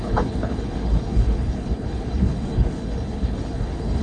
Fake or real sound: fake